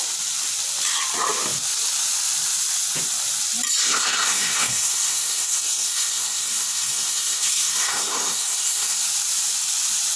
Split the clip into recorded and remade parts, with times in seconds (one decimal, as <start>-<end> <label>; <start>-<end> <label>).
0.0-3.8 recorded; 3.8-9.0 remade; 9.0-10.2 recorded

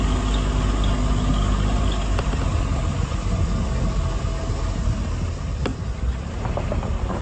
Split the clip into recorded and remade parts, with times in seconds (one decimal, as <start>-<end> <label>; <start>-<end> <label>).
0.0-7.2 recorded

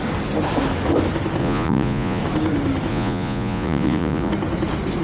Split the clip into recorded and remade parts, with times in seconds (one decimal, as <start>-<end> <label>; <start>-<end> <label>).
0.0-1.4 recorded; 1.4-2.2 remade; 2.2-2.9 recorded; 2.9-4.3 remade; 4.3-5.0 recorded

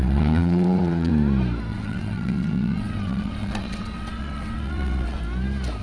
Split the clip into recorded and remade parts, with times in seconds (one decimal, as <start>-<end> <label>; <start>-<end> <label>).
0.0-1.1 remade; 1.1-1.7 recorded; 1.7-5.2 remade; 5.2-5.8 recorded

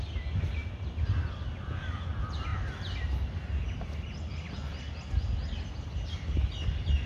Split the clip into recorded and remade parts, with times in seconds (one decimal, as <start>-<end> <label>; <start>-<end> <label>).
0.0-7.1 recorded

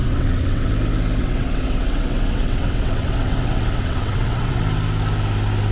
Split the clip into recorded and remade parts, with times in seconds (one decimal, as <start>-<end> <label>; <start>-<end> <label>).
0.0-0.7 remade; 0.7-1.2 recorded; 1.2-4.6 remade; 4.6-5.7 recorded